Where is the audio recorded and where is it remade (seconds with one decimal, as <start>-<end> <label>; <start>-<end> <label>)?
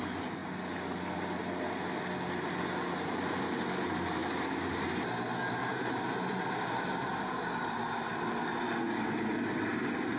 0.0-10.2 recorded